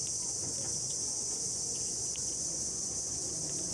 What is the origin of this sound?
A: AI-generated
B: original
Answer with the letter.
A